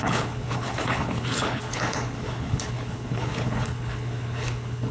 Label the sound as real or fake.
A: fake